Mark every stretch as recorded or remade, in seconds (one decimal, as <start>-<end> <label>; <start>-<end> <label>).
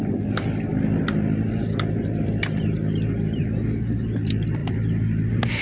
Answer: 0.0-5.6 remade